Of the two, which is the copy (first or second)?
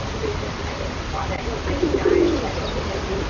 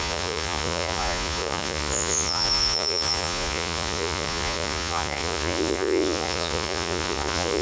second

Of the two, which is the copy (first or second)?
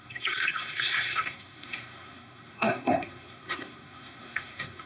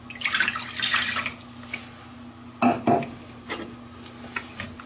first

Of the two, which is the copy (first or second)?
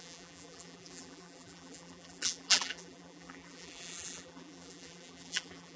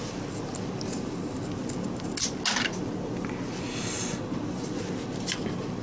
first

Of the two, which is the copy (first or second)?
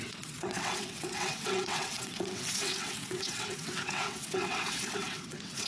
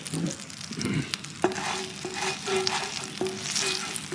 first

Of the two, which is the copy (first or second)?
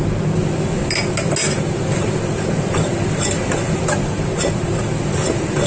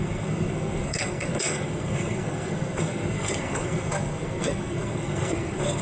second